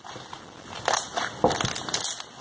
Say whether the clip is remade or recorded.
recorded